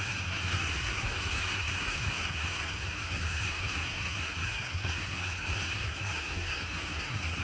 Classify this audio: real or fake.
fake